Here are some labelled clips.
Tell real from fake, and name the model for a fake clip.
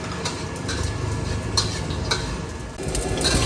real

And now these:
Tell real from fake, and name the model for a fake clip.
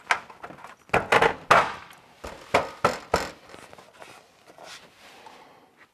real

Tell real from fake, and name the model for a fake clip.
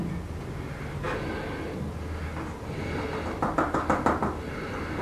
real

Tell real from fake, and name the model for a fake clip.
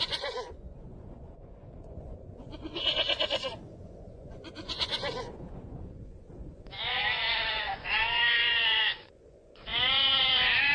fake, vocoder, Vocos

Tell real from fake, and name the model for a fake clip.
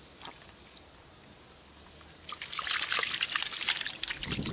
real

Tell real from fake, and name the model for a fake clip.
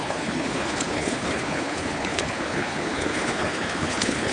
fake, codec, HILCodec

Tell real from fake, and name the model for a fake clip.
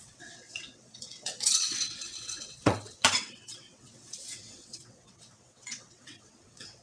fake, vocoder, WaveNeXt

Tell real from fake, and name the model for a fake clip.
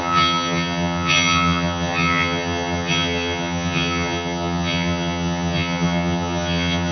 fake, vocoder, HiFi-GAN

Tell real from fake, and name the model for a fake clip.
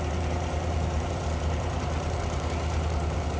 fake, vocoder, BigVGAN v2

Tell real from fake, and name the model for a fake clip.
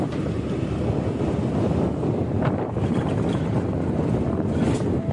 real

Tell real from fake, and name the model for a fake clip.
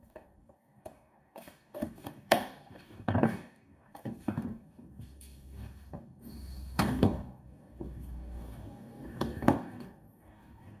fake, codec, DAC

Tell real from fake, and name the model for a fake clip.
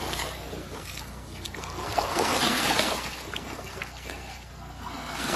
fake, codec, SNAC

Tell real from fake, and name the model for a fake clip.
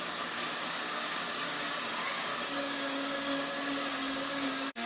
fake, codec, DAC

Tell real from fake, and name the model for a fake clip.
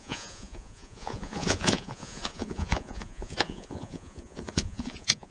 fake, vocoder, Vocos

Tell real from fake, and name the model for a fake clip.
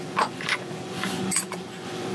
fake, vocoder, Vocos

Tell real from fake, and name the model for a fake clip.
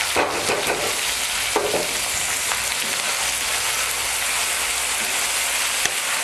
real